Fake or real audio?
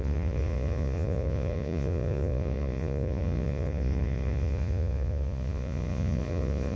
fake